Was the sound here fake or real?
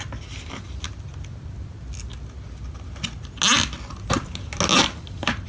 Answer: real